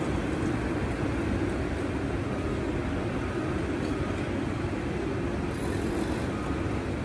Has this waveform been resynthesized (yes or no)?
no